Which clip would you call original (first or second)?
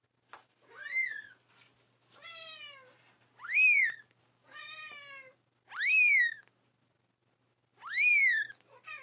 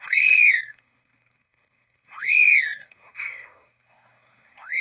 first